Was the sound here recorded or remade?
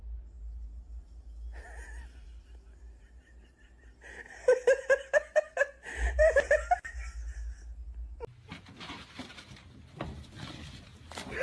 recorded